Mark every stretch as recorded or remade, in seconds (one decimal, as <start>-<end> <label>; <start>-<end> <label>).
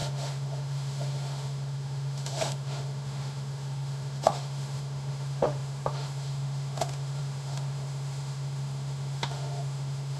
0.0-10.2 remade